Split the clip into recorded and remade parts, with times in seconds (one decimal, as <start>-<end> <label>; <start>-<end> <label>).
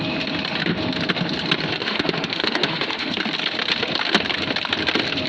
0.0-1.8 recorded; 1.8-3.2 remade; 3.2-5.3 recorded